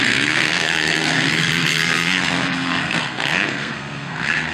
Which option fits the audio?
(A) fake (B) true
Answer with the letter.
A